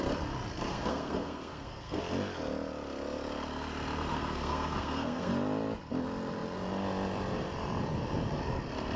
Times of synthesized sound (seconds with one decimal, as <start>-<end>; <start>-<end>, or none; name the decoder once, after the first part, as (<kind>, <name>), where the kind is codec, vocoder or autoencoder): 0.7-2.0 (codec, SNAC); 4.1-5.3